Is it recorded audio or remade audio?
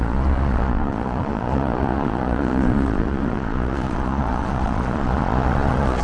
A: remade